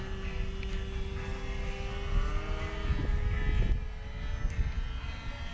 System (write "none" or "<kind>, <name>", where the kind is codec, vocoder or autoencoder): none